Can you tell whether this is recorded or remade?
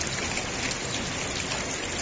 recorded